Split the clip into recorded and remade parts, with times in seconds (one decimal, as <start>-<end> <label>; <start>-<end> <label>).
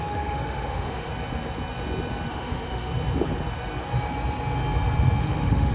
0.0-1.1 remade; 1.1-2.3 recorded; 2.3-2.9 remade; 2.9-5.2 recorded; 5.2-5.7 remade